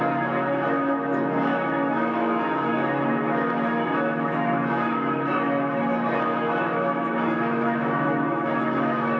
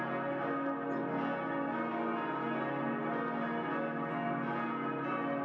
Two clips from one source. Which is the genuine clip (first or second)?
second